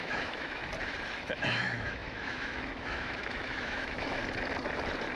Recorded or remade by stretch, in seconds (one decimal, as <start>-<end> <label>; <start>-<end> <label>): 0.0-0.6 remade; 0.6-1.2 recorded; 1.2-4.2 remade; 4.2-5.2 recorded